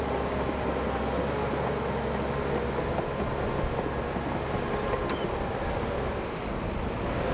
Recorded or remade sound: recorded